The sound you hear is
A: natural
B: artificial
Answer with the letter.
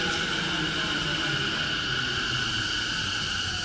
A